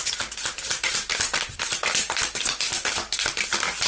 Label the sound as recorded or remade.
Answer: recorded